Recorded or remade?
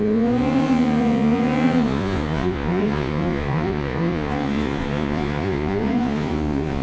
remade